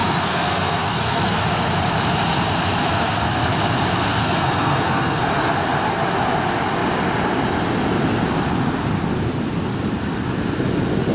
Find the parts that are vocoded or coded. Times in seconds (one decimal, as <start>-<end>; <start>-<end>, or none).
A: 0.0-1.4; 2.8-3.4; 4.2-5.3